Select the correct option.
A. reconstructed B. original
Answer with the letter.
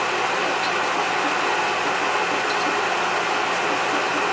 B